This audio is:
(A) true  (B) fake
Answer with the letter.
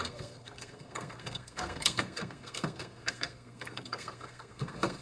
B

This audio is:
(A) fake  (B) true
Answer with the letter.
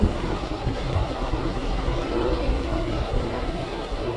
A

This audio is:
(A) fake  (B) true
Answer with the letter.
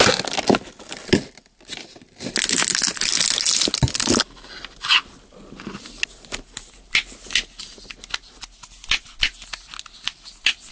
B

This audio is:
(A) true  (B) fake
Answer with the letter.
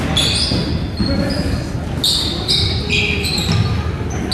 A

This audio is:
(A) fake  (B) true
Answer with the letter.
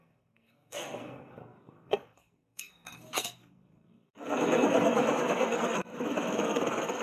A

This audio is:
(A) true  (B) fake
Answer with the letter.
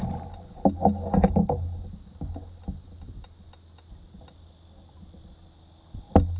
A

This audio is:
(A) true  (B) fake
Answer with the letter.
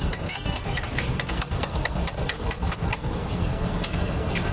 B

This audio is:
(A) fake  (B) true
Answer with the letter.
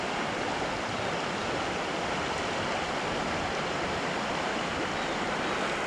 B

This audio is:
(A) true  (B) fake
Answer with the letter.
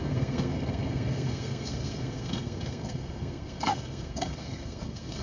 B